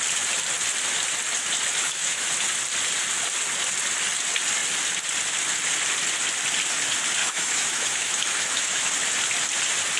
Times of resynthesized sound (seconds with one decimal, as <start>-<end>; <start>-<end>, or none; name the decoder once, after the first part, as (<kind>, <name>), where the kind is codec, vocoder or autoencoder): 1.8-2.3 (autoencoder, DAC-VAE); 7.2-8.9